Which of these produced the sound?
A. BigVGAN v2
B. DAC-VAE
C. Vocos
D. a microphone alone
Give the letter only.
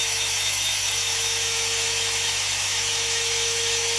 B